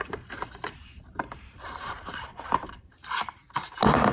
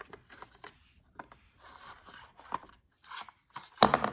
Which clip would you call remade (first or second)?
first